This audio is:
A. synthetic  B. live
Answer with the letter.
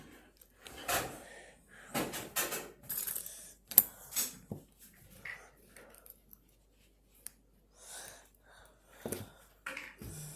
B